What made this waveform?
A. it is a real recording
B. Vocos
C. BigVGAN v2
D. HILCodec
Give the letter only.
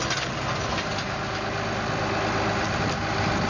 A